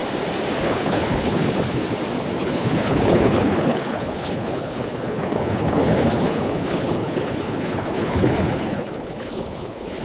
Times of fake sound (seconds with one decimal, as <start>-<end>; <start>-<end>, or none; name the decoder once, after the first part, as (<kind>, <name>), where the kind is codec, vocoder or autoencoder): 0.6-1.8 (codec, HILCodec); 2.4-10.0